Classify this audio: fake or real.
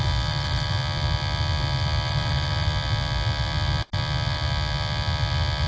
real